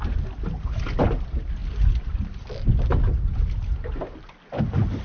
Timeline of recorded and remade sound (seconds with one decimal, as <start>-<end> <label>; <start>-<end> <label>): 0.0-5.0 recorded